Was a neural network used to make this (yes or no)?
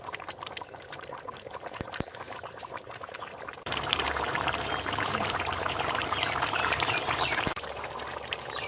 yes